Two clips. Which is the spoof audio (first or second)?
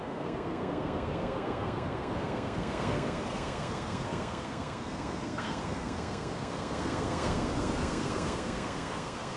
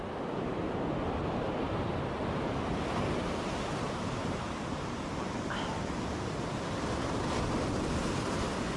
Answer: first